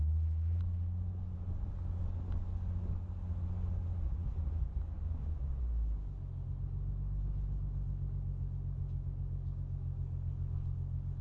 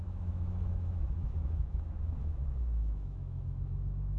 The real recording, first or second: first